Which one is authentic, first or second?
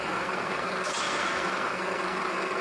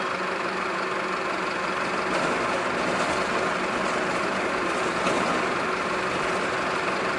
second